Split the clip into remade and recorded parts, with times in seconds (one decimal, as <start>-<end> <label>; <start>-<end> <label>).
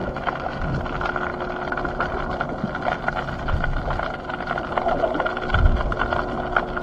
0.0-0.6 remade; 0.6-6.8 recorded